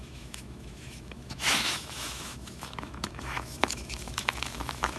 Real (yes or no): no